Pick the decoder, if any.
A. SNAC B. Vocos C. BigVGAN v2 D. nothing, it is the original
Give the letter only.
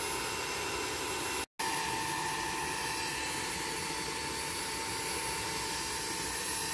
D